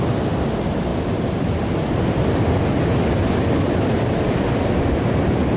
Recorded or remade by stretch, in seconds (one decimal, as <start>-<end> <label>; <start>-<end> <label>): 0.0-5.6 recorded